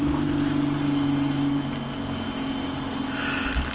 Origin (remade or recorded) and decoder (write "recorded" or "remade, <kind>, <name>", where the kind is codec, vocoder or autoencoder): recorded